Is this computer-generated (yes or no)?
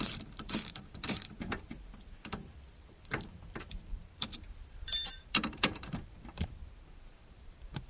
yes